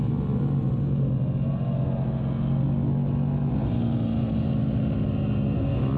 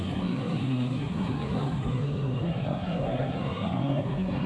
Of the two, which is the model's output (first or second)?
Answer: second